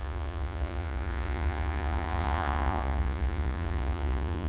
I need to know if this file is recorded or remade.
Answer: remade